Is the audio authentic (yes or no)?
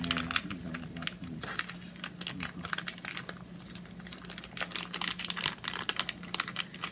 yes